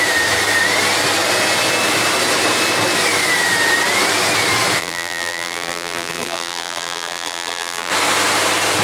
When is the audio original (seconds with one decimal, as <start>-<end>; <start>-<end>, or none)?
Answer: 0.0-4.8; 7.9-8.8